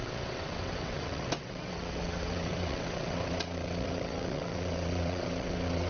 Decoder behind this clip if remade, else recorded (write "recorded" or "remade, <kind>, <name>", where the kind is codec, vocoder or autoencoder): remade, vocoder, WaveNeXt